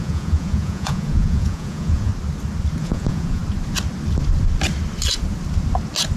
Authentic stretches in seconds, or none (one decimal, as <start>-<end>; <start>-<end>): 2.1-2.8; 3.4-6.2